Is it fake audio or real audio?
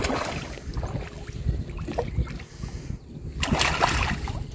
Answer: real